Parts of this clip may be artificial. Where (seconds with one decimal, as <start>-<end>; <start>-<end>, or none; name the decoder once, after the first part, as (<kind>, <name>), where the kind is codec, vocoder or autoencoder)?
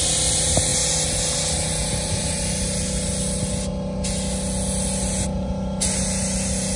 none